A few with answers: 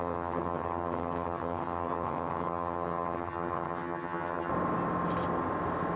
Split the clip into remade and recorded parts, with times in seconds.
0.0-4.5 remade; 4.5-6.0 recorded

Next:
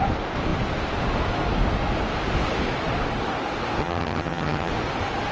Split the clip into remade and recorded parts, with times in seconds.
0.0-3.8 recorded; 3.8-4.7 remade; 4.7-5.3 recorded

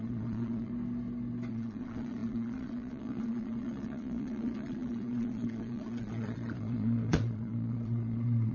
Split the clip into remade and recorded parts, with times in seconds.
0.0-0.7 remade; 0.7-1.5 recorded; 1.5-8.5 remade

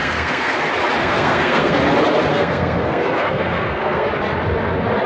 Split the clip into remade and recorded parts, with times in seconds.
0.0-0.6 remade; 0.6-1.0 recorded; 1.0-1.8 remade; 1.8-2.3 recorded; 2.3-4.1 remade; 4.1-5.1 recorded

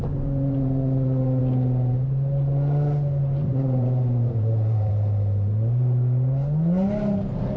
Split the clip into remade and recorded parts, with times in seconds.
0.0-1.4 remade; 1.4-3.4 recorded; 3.4-4.9 remade; 4.9-7.6 recorded

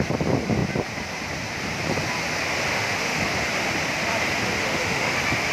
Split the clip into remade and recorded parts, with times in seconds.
0.0-2.7 recorded; 2.7-3.2 remade; 3.2-4.6 recorded; 4.6-5.1 remade; 5.1-5.5 recorded

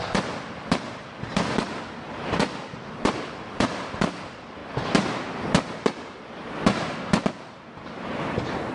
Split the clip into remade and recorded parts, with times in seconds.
0.0-4.6 remade; 4.6-8.7 recorded